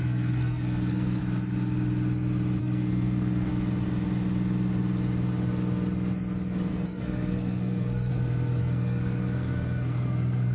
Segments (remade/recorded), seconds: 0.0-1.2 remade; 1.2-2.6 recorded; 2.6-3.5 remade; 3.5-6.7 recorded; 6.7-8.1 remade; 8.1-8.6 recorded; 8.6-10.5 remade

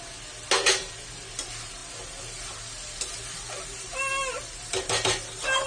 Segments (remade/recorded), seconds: 0.0-5.7 recorded

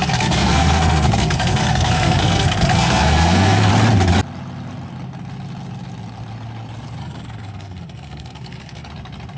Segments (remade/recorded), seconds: 0.0-3.7 remade; 3.7-7.0 recorded; 7.0-8.9 remade; 8.9-9.4 recorded

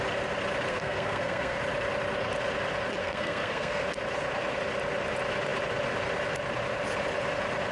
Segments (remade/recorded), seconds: 0.0-0.7 recorded; 0.7-1.6 remade; 1.6-3.0 recorded; 3.0-3.8 remade; 3.8-7.7 recorded

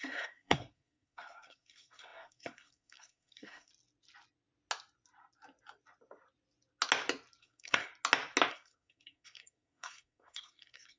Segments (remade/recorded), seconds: 0.0-3.7 remade; 3.7-7.4 recorded; 7.4-7.9 remade; 7.9-8.5 recorded; 8.5-11.0 remade

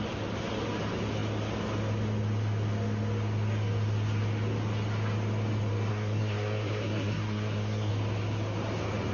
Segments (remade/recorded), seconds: 0.0-5.9 recorded; 5.9-7.9 remade; 7.9-9.1 recorded

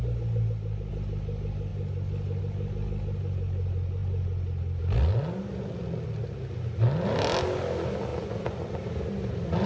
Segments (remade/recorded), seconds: 0.0-9.7 recorded